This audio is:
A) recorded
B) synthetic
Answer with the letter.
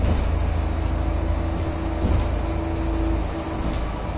A